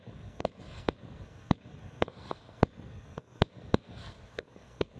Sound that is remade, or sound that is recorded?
remade